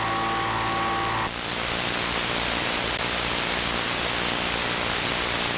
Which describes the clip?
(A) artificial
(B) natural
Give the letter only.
B